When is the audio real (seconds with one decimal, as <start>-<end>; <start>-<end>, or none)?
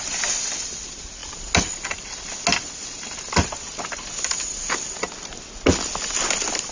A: 0.0-6.7